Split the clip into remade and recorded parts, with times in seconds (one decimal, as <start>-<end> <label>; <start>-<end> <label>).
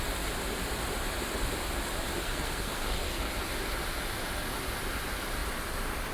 0.0-2.2 recorded; 2.2-3.3 remade; 3.3-6.1 recorded